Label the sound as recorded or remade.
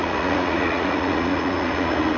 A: remade